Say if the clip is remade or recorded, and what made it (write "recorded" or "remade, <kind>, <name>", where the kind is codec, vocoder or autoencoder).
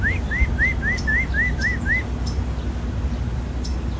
recorded